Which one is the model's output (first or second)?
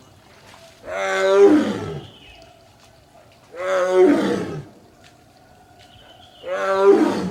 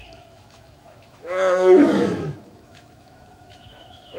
second